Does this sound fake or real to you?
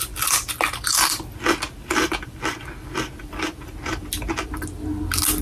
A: real